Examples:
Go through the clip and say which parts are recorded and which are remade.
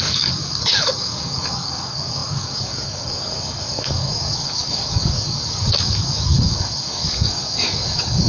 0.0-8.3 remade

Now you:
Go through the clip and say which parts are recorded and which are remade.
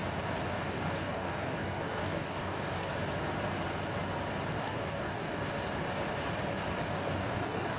0.0-0.5 recorded; 0.5-2.9 remade; 2.9-4.6 recorded; 4.6-5.4 remade; 5.4-6.9 recorded; 6.9-7.8 remade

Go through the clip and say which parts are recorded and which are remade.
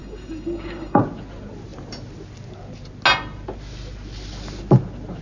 0.0-1.0 remade; 1.0-5.2 recorded